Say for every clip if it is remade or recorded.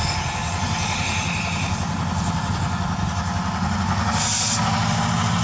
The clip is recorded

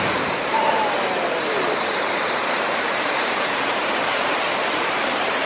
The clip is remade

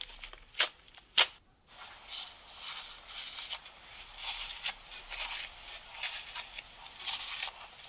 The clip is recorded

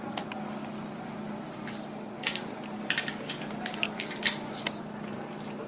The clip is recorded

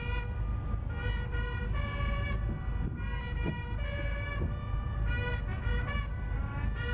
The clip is recorded